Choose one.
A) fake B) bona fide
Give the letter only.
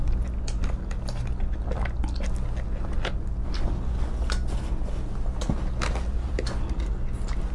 B